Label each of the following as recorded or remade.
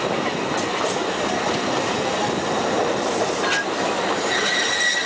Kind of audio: recorded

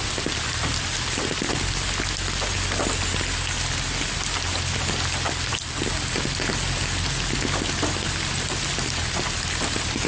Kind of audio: recorded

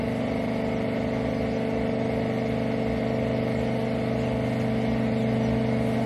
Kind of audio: recorded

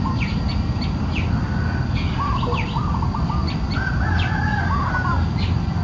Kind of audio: recorded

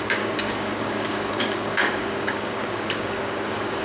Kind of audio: remade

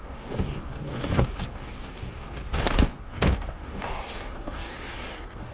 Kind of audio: remade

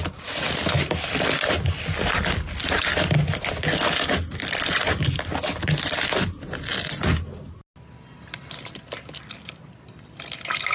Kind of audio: recorded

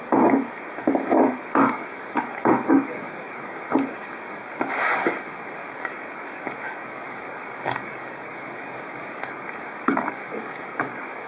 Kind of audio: remade